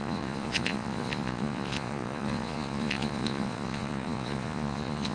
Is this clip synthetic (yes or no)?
yes